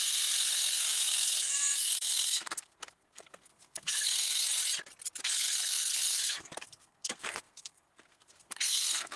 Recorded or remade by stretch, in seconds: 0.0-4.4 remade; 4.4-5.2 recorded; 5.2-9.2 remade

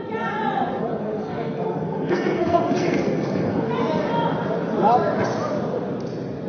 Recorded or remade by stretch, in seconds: 0.0-0.8 recorded; 0.8-3.7 remade; 3.7-6.5 recorded

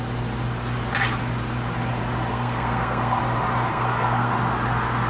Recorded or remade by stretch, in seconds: 0.0-2.3 recorded; 2.3-3.2 remade; 3.2-3.7 recorded; 3.7-4.3 remade; 4.3-5.1 recorded

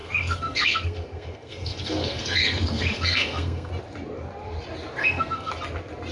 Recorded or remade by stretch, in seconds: 0.0-3.7 remade; 3.7-5.0 recorded; 5.0-5.5 remade; 5.5-6.1 recorded

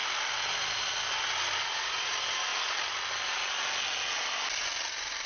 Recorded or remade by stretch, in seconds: 0.0-5.3 recorded

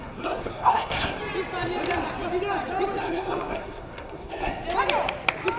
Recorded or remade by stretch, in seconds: 0.0-1.2 remade; 1.2-3.0 recorded; 3.0-4.6 remade; 4.6-5.6 recorded